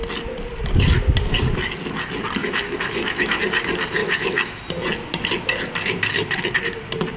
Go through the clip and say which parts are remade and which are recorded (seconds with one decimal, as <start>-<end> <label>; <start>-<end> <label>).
0.0-2.4 recorded; 2.4-3.4 remade; 3.4-4.0 recorded; 4.0-4.6 remade; 4.6-7.2 recorded